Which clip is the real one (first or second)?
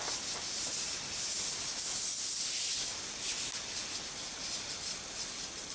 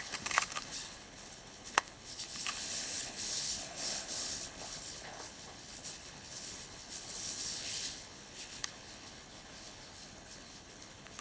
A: first